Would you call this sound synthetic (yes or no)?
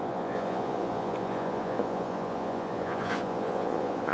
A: yes